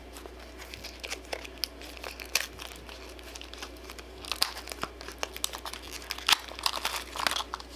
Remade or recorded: recorded